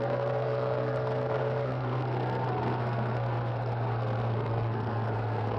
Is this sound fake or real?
fake